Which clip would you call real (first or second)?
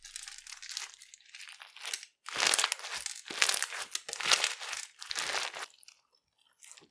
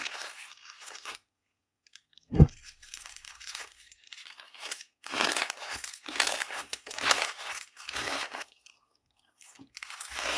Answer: first